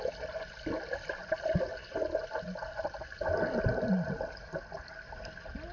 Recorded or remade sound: recorded